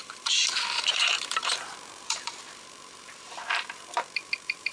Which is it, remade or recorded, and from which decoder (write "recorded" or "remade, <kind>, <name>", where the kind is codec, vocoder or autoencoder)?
remade, vocoder, BigVGAN v2